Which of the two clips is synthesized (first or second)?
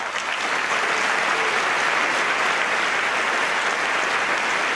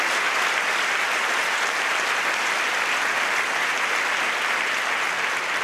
second